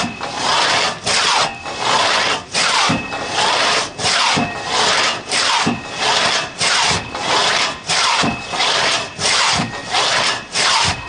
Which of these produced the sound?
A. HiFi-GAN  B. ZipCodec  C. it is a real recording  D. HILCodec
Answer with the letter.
C